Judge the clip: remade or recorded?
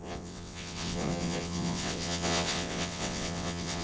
remade